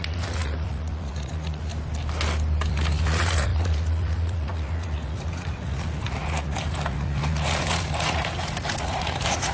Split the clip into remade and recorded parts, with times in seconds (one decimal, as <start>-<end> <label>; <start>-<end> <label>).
0.0-1.7 remade; 1.7-2.7 recorded; 2.7-9.5 remade